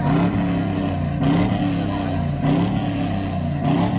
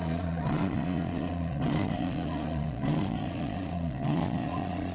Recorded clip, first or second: first